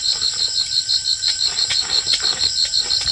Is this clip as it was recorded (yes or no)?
yes